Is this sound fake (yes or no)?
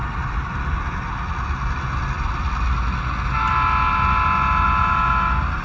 no